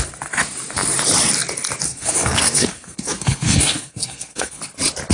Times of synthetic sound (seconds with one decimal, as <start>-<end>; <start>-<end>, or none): 1.9-4.6